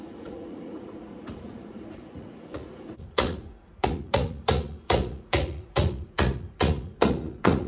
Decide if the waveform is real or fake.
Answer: fake